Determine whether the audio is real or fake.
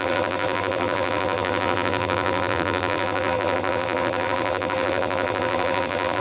fake